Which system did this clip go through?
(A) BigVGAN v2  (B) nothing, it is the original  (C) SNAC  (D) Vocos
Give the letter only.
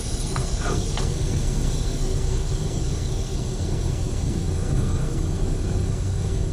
C